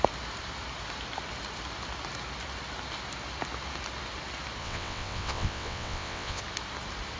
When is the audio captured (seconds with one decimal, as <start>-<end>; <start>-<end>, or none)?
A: 0.0-4.6; 6.4-7.2